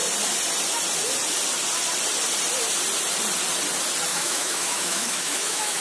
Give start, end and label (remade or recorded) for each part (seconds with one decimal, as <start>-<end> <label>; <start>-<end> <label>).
0.0-4.1 recorded; 4.1-5.8 remade